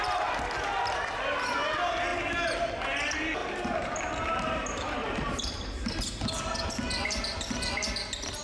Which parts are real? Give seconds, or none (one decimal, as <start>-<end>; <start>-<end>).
0.0-3.4; 6.0-8.4